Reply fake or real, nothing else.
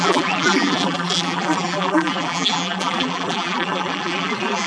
fake